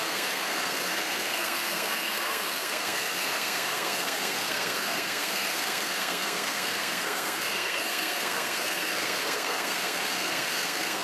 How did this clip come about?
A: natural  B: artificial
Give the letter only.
B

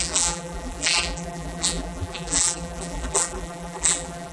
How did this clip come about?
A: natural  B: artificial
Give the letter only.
B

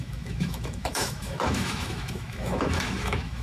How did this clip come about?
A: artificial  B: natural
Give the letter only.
A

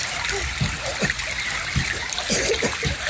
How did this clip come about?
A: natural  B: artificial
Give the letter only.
A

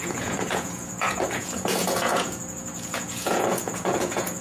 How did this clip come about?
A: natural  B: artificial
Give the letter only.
B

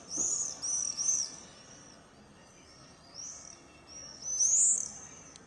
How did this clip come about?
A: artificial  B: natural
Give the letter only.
B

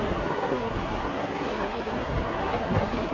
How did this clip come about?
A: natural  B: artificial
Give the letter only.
B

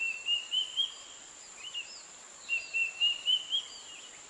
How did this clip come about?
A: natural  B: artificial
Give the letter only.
A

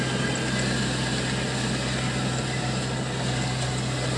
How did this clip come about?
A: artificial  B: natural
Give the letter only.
B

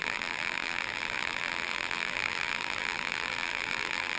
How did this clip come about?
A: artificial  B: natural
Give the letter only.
A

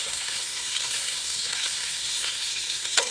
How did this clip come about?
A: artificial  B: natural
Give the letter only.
A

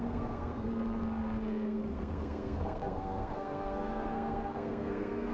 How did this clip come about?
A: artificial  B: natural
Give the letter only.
A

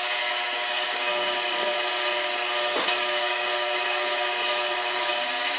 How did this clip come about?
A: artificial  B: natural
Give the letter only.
A